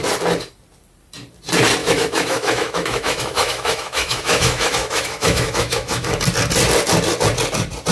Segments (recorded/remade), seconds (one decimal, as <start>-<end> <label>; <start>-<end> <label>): 0.0-1.8 recorded; 1.8-6.2 remade; 6.2-7.9 recorded